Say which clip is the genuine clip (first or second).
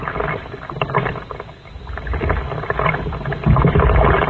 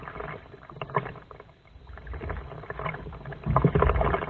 first